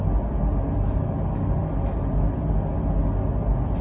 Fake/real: real